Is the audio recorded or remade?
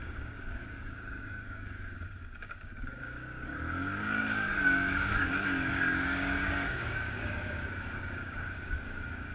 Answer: remade